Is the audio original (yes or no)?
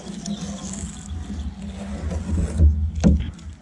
yes